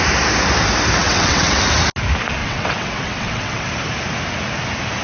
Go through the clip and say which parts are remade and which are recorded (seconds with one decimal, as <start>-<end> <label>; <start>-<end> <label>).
0.0-1.0 recorded; 1.0-1.6 remade; 1.6-2.4 recorded; 2.4-3.7 remade; 3.7-5.0 recorded